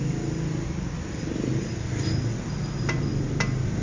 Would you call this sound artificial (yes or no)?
no